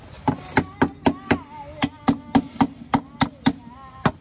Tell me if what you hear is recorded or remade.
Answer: recorded